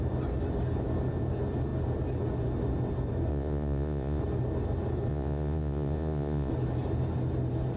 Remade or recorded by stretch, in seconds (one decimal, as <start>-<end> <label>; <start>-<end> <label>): 0.0-3.3 recorded; 3.3-4.2 remade; 4.2-5.1 recorded; 5.1-6.5 remade; 6.5-7.8 recorded